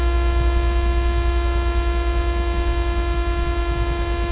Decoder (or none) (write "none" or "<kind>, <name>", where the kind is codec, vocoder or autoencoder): none